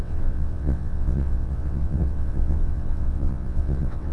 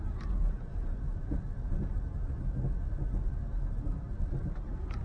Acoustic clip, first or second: second